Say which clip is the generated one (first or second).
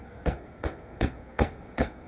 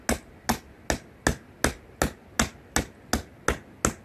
first